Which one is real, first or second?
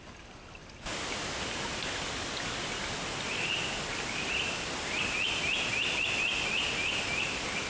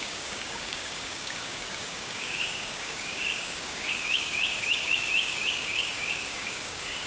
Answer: first